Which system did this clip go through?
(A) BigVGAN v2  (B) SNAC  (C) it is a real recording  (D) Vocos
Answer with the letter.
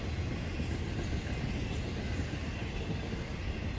C